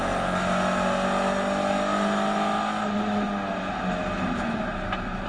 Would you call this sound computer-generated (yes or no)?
no